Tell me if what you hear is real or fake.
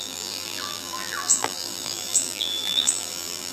fake